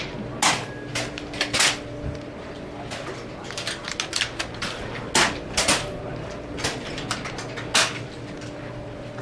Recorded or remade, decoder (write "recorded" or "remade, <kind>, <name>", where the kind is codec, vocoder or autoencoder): recorded